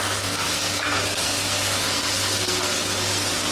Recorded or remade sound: remade